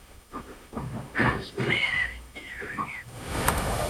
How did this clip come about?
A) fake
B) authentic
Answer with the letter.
A